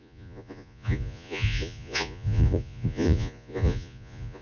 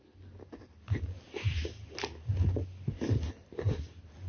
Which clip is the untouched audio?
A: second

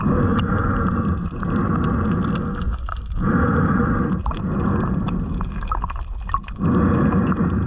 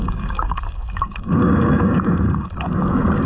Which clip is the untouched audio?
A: first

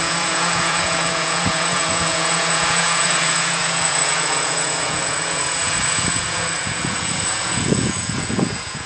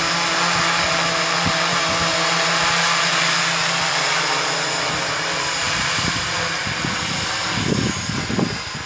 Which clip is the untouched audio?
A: second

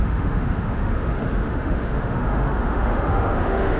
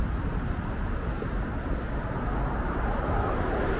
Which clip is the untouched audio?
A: second